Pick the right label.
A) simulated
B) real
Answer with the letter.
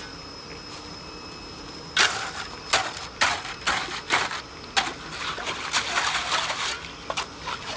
B